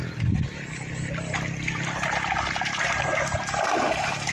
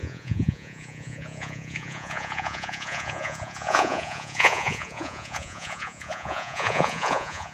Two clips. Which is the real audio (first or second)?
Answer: first